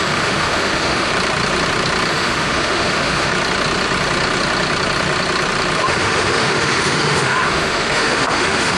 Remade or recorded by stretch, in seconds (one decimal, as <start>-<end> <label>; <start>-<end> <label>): 0.0-1.1 remade; 1.1-2.1 recorded; 2.1-3.3 remade; 3.3-5.8 recorded; 5.8-8.8 remade